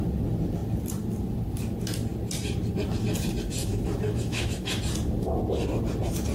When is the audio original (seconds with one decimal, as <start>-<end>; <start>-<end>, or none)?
0.0-3.6; 4.8-6.3